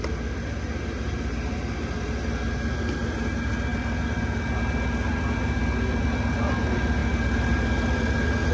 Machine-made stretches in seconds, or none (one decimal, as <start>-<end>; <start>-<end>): none